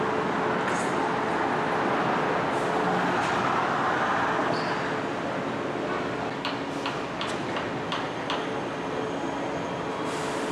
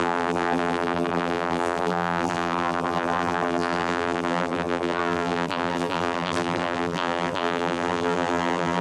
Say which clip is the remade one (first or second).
second